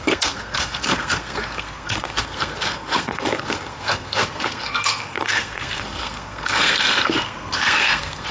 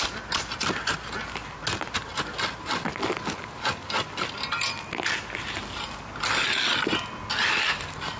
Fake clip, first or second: first